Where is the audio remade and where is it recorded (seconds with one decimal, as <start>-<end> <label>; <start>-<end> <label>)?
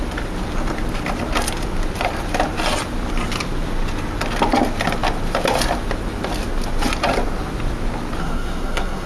0.0-8.2 recorded; 8.2-9.1 remade